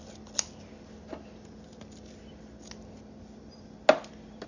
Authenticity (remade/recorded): recorded